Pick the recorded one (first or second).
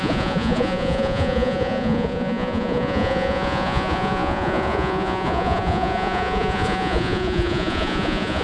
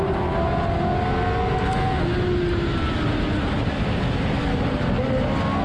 second